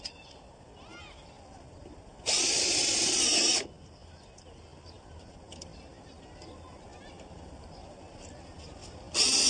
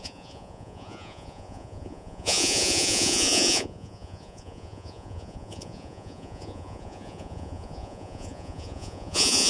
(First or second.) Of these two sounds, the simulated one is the second